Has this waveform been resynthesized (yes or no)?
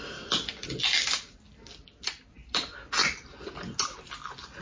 no